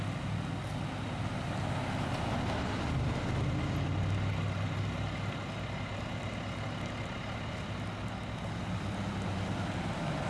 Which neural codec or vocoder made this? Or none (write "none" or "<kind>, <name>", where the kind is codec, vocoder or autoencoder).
none